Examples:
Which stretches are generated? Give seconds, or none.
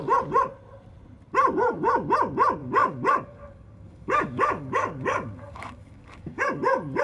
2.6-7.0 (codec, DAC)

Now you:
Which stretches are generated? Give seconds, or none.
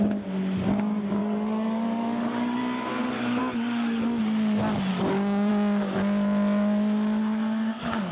1.2-2.6 (codec, DAC); 3.0-4.2; 4.9-5.5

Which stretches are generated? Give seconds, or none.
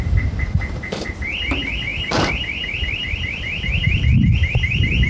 0.0-5.1 (vocoder, BigVGAN v2)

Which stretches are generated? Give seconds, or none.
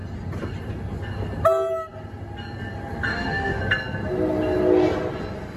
3.1-3.6 (autoencoder, DAC-VAE)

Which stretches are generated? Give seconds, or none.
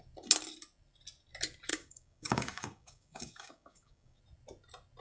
1.7-4.2 (codec, DAC)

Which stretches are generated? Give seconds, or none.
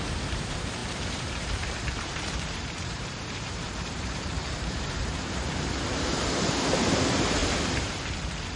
0.0-7.4 (vocoder, BigVGAN v2)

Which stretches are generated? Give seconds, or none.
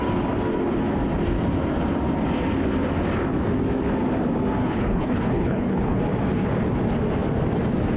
4.6-6.0 (codec, HILCodec)